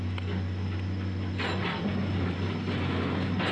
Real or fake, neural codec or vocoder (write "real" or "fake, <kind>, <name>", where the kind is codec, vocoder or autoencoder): real